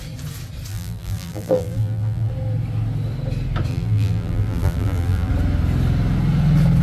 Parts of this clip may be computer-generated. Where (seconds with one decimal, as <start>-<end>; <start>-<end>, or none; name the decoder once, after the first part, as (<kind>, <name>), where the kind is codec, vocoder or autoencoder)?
0.7-2.3 (vocoder, BigVGAN v2); 3.7-5.3